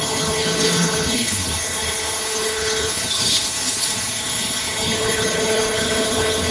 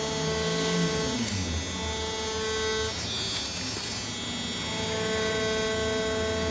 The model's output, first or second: first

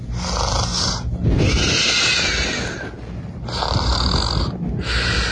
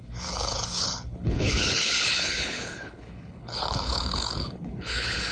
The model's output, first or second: second